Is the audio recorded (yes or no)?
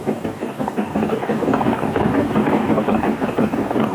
no